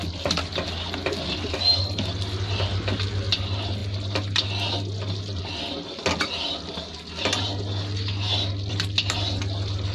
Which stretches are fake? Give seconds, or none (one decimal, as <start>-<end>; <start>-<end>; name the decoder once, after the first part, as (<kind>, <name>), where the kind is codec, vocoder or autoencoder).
none